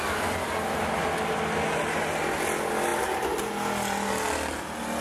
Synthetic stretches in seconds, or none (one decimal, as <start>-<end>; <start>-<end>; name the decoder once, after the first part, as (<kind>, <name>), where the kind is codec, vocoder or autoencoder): none